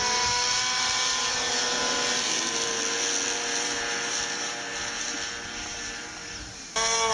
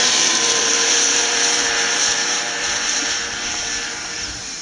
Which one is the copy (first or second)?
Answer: second